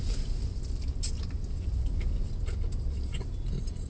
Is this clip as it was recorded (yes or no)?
yes